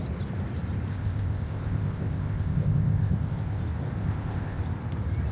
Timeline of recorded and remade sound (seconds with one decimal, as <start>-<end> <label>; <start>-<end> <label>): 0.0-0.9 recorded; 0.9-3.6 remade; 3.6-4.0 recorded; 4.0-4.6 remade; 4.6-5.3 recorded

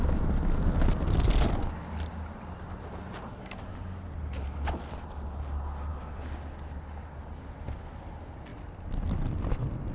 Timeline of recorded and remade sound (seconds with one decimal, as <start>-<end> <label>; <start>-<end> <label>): 0.0-9.9 recorded

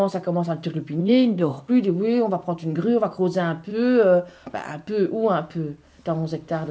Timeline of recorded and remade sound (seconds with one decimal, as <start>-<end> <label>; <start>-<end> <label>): 0.0-1.0 recorded; 1.0-1.7 remade; 1.7-6.7 recorded